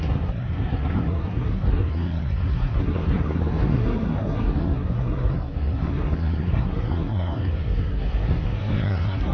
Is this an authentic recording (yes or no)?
no